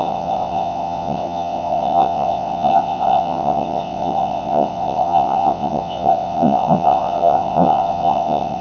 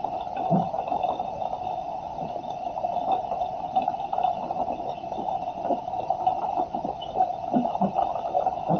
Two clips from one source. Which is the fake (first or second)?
first